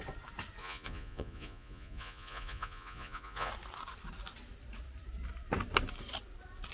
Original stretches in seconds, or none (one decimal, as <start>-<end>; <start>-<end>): 0.0-0.6; 3.5-6.7